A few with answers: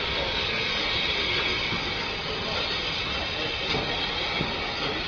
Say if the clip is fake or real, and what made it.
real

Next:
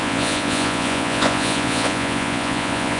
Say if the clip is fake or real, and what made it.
fake, vocoder, Vocos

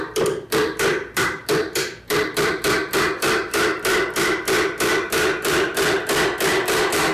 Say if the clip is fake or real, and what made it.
fake, vocoder, BigVGAN v2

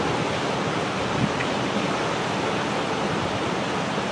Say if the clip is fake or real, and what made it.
real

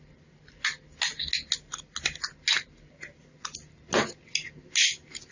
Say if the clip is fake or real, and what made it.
real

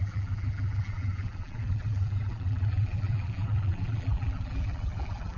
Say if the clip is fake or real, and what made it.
fake, vocoder, BigVGAN v2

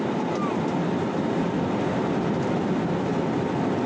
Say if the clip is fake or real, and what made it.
real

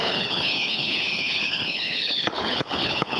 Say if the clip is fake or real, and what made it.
fake, codec, HILCodec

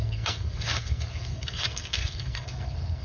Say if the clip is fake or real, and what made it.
fake, codec, SNAC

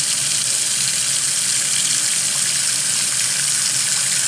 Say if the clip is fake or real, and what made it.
real